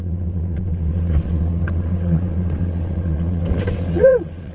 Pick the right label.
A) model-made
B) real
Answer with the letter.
A